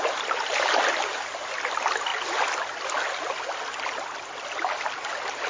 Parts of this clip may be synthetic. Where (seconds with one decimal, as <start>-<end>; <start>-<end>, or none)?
none